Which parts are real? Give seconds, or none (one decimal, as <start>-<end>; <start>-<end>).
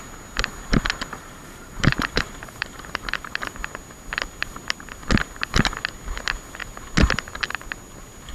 0.0-1.1; 3.5-8.3